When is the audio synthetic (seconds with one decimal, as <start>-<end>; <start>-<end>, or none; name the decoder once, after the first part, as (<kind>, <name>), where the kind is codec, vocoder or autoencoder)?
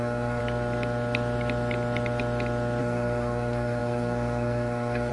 0.0-0.4 (codec, SNAC); 2.8-5.1